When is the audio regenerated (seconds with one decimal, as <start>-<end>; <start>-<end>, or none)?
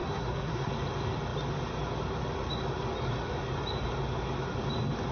0.0-0.7